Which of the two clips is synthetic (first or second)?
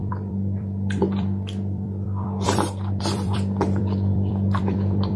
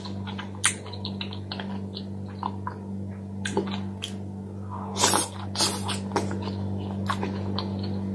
first